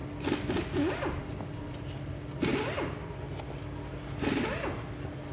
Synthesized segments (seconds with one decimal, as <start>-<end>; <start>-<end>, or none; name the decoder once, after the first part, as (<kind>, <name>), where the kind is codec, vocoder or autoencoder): none